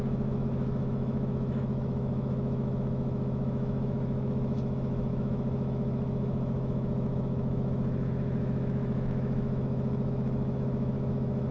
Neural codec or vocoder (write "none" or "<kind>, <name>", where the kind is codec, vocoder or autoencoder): autoencoder, DAC-VAE